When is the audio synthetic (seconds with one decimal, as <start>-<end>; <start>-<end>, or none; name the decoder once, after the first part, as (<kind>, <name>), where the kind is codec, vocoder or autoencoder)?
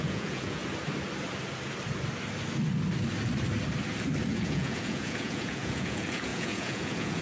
0.0-0.6 (vocoder, Vocos); 4.3-7.2